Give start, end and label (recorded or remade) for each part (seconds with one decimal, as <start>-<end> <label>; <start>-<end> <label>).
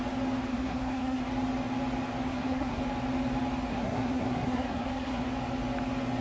0.0-0.5 recorded; 0.5-1.2 remade; 1.2-2.3 recorded; 2.3-2.8 remade; 2.8-3.7 recorded; 3.7-5.2 remade; 5.2-6.2 recorded